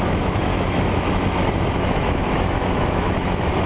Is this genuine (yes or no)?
no